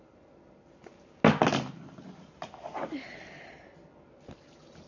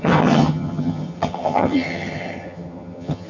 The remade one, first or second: second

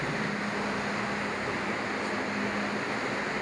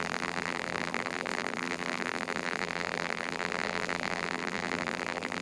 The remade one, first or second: second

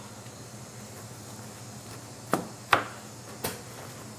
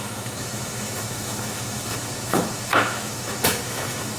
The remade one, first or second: second